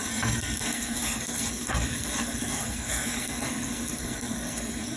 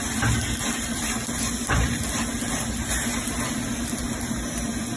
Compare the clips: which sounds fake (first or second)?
first